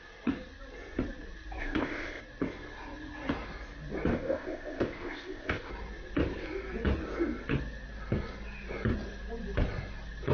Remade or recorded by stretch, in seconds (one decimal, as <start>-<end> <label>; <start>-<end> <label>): 0.0-1.6 recorded; 1.6-2.2 remade; 2.2-4.1 recorded; 4.1-5.7 remade; 5.7-10.3 recorded